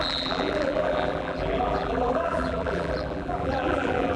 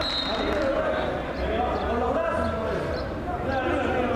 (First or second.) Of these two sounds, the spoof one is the first